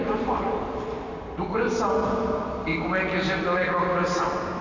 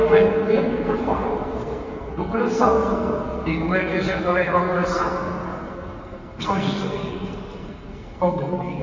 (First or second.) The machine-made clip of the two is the second